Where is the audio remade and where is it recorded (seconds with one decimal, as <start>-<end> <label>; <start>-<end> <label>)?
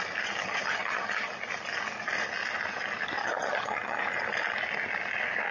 0.0-0.4 recorded; 0.4-1.3 remade; 1.3-3.2 recorded; 3.2-4.0 remade; 4.0-5.5 recorded